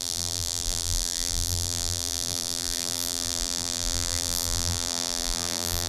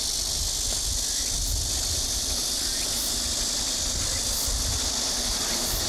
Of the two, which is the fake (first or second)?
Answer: first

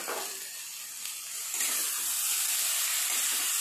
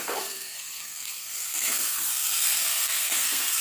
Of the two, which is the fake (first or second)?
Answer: second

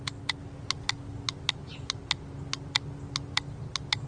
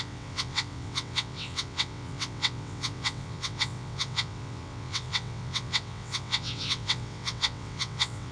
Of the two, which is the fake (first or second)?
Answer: second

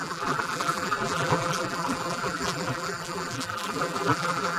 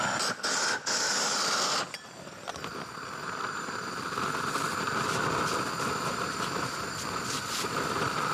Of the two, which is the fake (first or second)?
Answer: first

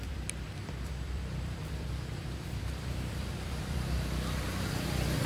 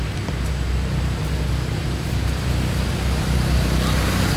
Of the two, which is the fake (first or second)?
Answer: first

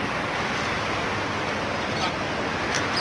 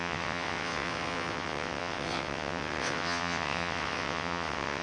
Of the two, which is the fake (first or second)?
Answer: second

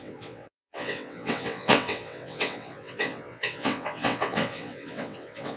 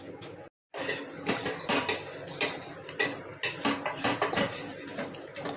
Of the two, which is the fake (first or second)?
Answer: first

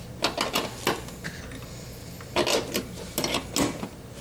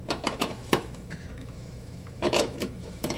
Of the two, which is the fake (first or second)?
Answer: second